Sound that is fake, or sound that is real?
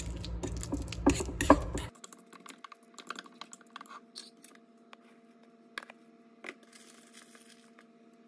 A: real